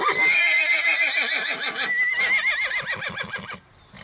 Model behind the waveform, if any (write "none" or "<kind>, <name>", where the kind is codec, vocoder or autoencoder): none